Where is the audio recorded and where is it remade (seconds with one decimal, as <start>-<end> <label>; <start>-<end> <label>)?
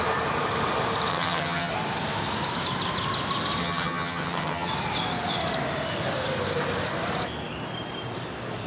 0.0-1.1 recorded; 1.1-1.7 remade; 1.7-3.6 recorded; 3.6-4.7 remade; 4.7-8.7 recorded